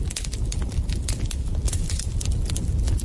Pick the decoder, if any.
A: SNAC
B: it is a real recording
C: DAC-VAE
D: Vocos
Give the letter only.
B